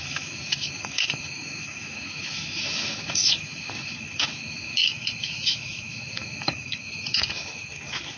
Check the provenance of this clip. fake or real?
fake